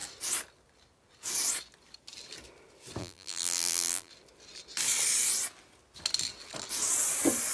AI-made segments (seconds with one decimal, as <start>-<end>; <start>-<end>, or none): 3.0-4.1